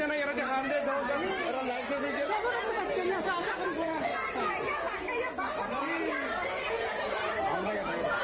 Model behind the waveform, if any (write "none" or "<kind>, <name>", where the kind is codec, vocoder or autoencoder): none